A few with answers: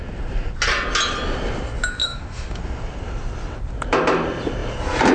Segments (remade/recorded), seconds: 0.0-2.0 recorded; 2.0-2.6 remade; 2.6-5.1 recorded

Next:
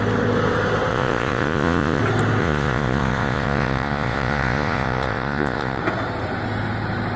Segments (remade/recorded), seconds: 0.0-0.9 recorded; 0.9-2.0 remade; 2.0-2.4 recorded; 2.4-5.8 remade; 5.8-7.2 recorded

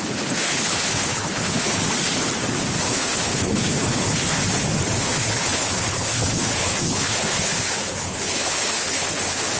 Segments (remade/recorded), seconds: 0.0-1.8 remade; 1.8-2.8 recorded; 2.8-4.4 remade; 4.4-5.0 recorded; 5.0-9.6 remade

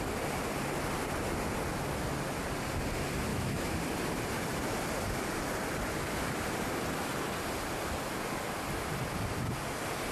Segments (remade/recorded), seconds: 0.0-3.3 recorded; 3.3-3.8 remade; 3.8-10.1 recorded

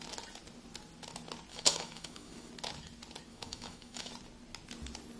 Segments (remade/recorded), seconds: 0.0-1.5 recorded; 1.5-2.5 remade; 2.5-3.3 recorded; 3.3-4.1 remade; 4.1-5.2 recorded

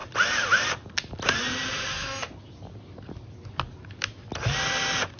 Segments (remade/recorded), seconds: 0.0-5.2 recorded

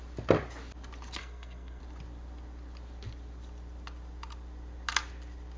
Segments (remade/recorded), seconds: 0.0-1.2 recorded; 1.2-1.8 remade; 1.8-5.6 recorded

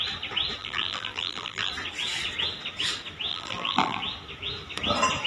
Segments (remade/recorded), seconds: 0.0-0.6 recorded; 0.6-1.7 remade; 1.7-3.3 recorded; 3.3-4.0 remade; 4.0-5.3 recorded